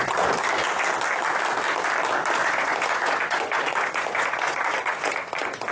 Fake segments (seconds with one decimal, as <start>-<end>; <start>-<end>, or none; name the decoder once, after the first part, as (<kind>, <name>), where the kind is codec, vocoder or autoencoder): 2.4-5.7 (vocoder, Vocos)